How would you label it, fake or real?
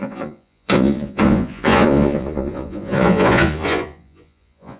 fake